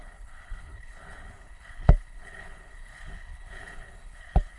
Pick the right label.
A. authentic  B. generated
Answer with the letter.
B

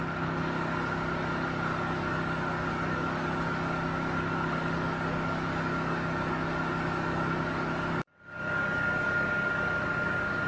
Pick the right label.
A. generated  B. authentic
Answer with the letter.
A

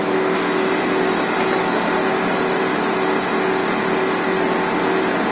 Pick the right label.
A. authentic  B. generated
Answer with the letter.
A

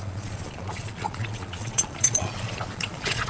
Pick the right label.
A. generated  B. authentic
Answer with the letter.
A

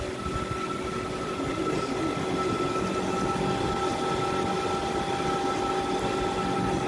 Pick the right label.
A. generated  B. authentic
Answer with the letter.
B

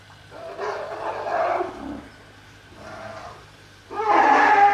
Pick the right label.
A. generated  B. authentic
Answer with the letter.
B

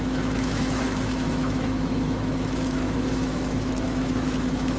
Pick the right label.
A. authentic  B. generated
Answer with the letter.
B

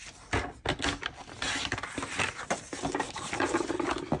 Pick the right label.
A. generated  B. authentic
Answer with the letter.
B